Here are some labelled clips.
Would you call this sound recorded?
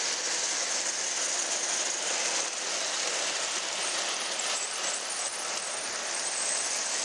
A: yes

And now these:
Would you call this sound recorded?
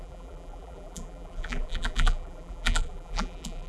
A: no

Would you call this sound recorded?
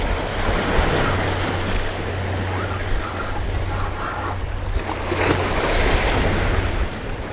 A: yes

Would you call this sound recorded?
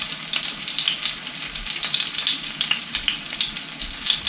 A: yes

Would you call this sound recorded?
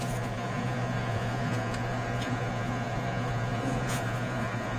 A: no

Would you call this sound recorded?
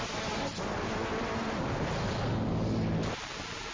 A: yes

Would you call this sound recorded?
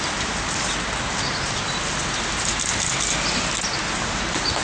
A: yes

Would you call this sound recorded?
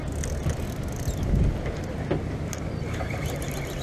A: yes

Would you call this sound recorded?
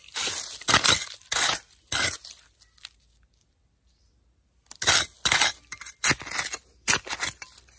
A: yes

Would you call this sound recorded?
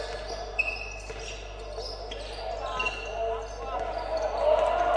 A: yes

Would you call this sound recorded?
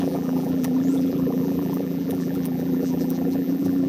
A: no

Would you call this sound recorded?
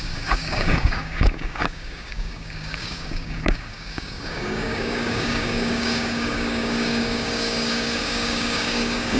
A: no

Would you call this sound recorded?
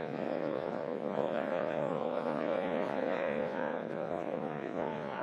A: no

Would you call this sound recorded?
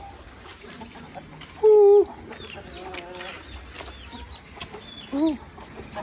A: yes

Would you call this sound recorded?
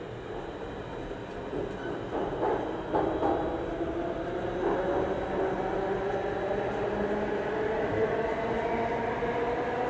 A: yes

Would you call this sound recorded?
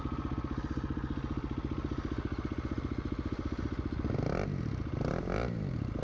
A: yes